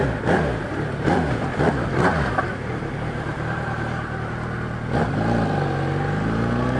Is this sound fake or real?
real